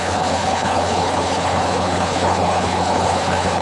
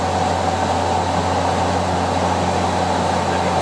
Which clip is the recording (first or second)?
second